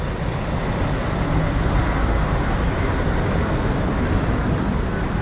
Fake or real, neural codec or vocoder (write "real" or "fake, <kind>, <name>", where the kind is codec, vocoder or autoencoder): real